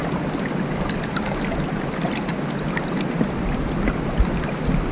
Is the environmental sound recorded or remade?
recorded